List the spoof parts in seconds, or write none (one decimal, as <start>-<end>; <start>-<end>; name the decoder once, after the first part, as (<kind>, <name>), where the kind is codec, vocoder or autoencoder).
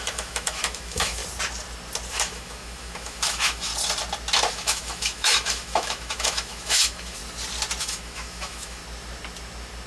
0.0-1.2 (autoencoder, DAC-VAE); 2.1-3.7; 4.5-7.2; 7.8-8.8